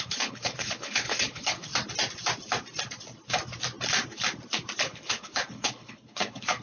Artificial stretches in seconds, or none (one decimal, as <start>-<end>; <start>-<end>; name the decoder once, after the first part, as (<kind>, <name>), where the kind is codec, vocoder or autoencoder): 0.0-1.7 (codec, HILCodec); 4.8-6.6